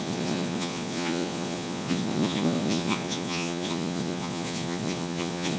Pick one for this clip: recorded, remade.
remade